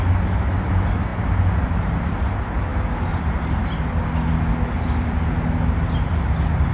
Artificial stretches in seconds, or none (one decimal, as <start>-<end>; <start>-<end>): none